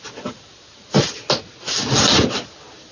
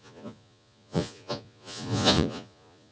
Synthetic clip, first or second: second